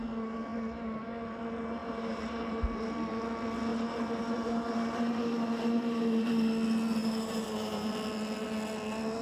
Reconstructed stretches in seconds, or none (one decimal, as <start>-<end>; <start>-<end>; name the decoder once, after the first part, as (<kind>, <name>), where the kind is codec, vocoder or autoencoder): 1.8-2.6 (vocoder, BigVGAN v2); 3.7-6.5; 7.0-7.9